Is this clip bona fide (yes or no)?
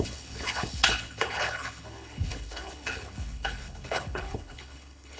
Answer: no